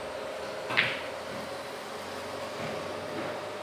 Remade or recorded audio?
recorded